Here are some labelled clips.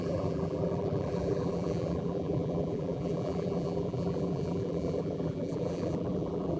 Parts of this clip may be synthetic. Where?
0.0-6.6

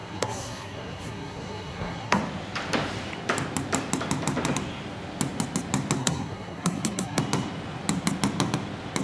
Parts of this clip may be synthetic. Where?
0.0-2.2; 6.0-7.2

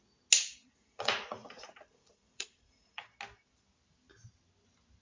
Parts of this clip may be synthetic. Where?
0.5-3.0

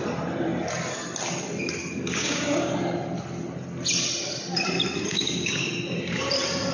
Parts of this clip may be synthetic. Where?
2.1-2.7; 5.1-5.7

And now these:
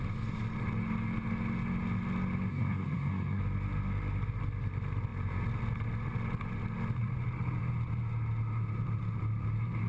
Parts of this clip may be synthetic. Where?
2.5-3.4

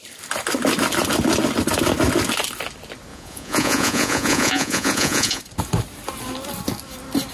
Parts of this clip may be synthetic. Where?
3.1-5.4

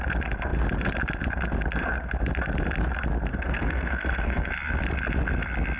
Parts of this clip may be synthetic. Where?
3.3-4.5